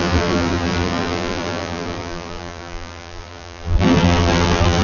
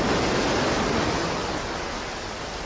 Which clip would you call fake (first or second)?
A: first